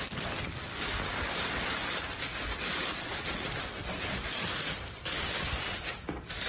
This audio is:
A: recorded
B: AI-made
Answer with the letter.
A